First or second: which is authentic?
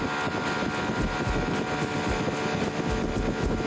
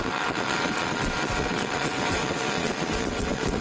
first